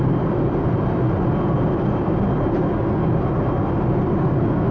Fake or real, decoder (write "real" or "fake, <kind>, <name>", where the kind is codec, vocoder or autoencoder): real